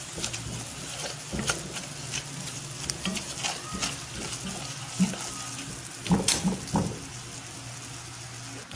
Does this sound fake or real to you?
real